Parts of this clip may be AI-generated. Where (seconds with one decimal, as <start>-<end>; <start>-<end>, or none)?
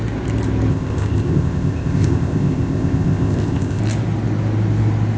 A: 0.7-3.8